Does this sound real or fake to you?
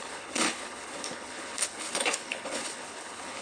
fake